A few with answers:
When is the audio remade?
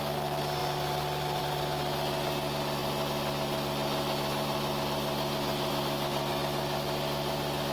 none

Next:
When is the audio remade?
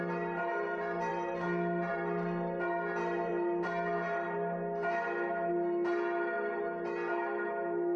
none